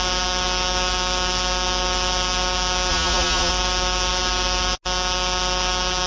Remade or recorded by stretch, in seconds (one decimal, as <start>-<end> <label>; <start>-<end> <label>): 0.0-2.9 recorded; 2.9-3.5 remade; 3.5-6.1 recorded